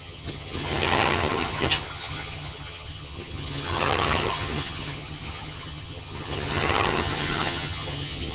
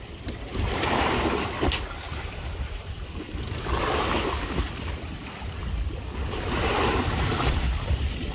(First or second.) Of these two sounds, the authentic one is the second